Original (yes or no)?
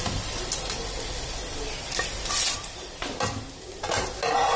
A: yes